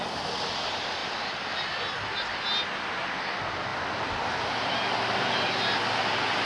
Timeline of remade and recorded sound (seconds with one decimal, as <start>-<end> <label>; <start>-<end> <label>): 0.0-6.4 recorded